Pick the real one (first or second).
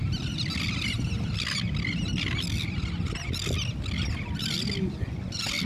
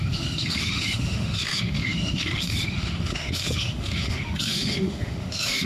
first